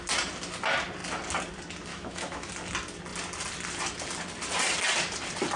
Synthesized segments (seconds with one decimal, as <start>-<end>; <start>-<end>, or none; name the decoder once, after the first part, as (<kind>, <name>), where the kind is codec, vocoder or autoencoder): 1.9-2.5 (autoencoder, DAC-VAE)